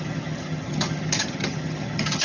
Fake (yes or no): yes